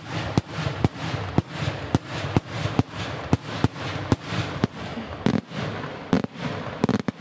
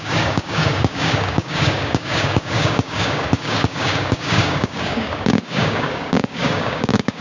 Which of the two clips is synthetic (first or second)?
second